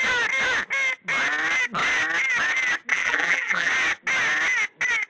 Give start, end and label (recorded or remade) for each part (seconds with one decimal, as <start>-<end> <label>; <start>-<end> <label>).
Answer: 0.0-2.9 recorded; 2.9-3.7 remade; 3.7-5.1 recorded